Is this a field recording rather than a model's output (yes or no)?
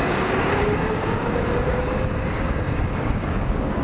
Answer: no